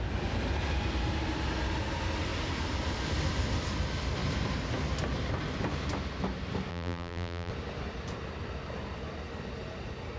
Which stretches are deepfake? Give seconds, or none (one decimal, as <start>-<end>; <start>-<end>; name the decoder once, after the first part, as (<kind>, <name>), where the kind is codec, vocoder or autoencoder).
6.7-7.5 (vocoder, BigVGAN v2)